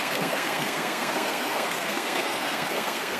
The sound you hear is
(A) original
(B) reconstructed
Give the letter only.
B